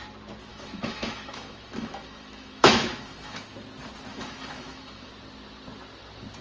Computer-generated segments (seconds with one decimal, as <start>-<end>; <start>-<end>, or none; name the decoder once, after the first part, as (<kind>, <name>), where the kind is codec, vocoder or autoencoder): 0.5-3.4 (autoencoder, DAC-VAE); 4.1-5.1